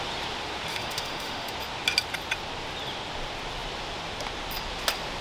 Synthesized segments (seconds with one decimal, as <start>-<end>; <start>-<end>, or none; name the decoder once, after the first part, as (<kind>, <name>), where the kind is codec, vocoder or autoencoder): 0.7-1.5 (autoencoder, DAC-VAE)